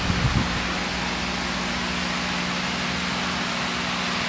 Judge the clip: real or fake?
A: real